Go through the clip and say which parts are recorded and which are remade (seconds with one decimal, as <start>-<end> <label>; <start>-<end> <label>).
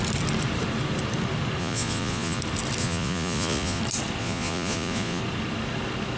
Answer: 0.0-1.6 recorded; 1.6-2.4 remade; 2.4-2.8 recorded; 2.8-3.8 remade; 3.8-4.2 recorded; 4.2-5.2 remade; 5.2-6.2 recorded